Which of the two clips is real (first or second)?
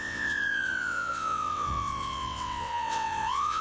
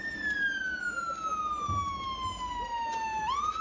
second